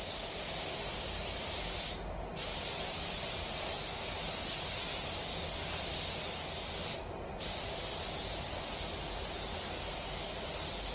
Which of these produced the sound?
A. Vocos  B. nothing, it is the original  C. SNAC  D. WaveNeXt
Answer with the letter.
B